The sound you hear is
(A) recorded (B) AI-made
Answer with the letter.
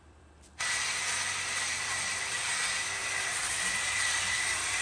B